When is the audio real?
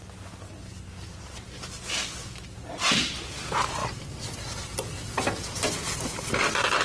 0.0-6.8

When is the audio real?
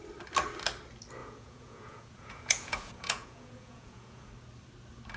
0.0-1.2; 4.3-5.2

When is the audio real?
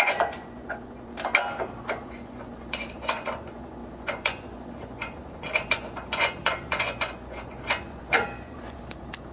1.1-1.8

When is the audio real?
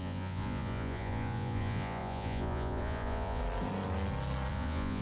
3.4-4.5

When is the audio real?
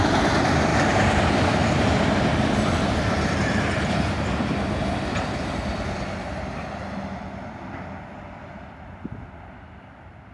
0.0-0.7; 1.2-10.3